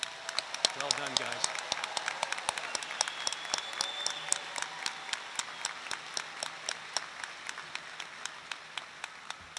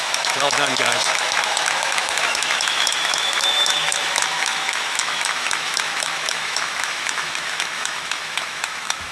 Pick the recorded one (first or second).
first